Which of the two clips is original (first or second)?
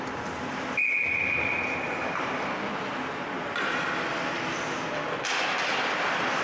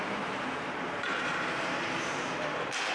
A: first